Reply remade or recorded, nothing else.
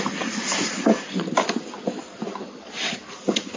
recorded